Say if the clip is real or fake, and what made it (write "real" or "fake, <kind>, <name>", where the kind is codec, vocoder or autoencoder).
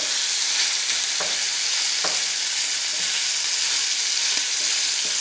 real